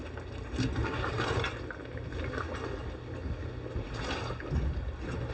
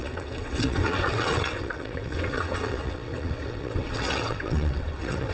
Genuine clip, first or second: first